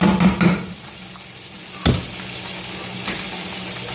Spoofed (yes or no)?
no